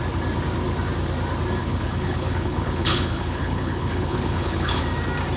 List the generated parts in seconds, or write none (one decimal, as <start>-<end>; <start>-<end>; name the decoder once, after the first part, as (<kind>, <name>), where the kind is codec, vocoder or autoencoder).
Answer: 1.6-4.8 (codec, HILCodec)